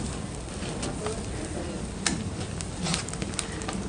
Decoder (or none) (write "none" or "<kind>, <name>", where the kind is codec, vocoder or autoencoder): vocoder, BigVGAN v2